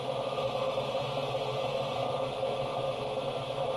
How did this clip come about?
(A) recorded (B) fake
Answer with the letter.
A